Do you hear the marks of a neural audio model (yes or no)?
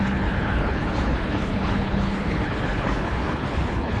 yes